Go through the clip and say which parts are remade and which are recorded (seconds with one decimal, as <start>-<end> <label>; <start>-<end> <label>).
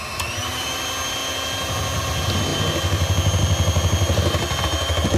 0.0-5.2 recorded